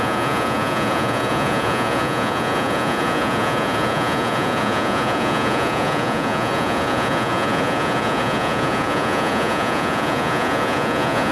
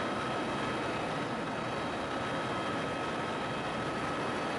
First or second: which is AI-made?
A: first